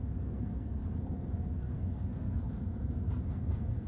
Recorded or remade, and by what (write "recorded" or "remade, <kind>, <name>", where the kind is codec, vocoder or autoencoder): remade, codec, SNAC